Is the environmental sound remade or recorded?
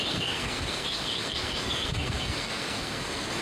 remade